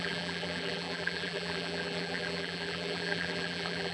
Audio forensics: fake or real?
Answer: fake